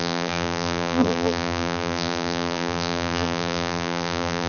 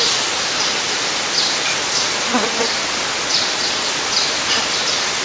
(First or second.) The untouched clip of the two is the second